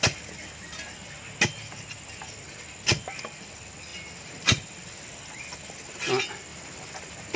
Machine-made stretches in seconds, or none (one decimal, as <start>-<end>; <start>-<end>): none